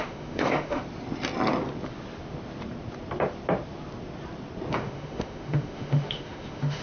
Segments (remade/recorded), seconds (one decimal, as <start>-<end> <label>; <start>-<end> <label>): 0.0-0.8 remade; 0.8-4.7 recorded; 4.7-6.8 remade